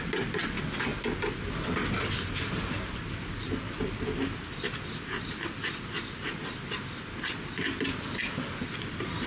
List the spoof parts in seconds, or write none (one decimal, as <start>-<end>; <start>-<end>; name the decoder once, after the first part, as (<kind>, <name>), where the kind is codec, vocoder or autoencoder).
none